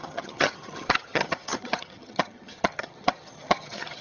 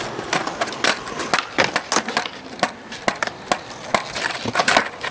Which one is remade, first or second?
first